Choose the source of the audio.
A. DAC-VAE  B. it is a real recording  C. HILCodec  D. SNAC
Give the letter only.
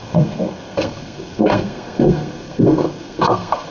D